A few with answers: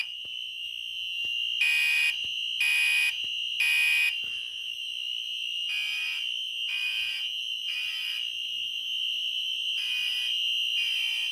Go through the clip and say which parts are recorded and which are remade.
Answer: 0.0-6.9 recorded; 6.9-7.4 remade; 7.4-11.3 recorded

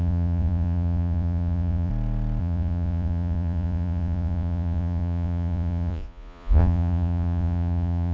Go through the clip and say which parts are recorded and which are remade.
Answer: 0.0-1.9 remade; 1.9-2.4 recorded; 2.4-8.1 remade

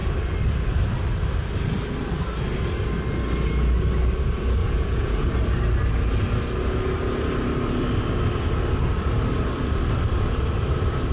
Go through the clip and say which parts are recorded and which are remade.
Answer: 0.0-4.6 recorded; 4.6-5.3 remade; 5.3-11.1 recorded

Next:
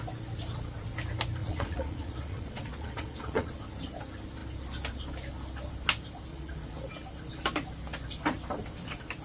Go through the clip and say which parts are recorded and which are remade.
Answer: 0.0-1.4 recorded; 1.4-3.5 remade; 3.5-6.3 recorded; 6.3-6.9 remade; 6.9-9.2 recorded

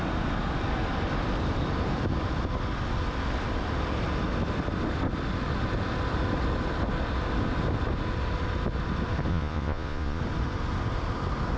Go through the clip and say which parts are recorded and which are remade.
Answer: 0.0-9.3 recorded; 9.3-10.2 remade; 10.2-11.6 recorded